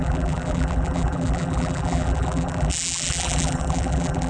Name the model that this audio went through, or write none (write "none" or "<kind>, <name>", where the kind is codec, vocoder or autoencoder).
vocoder, BigVGAN v2